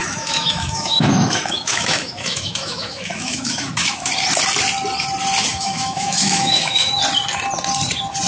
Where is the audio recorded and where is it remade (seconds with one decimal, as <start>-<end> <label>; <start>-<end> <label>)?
0.0-4.1 remade; 4.1-5.5 recorded; 5.5-6.9 remade; 6.9-8.3 recorded